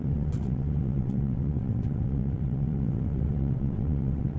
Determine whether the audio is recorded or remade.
remade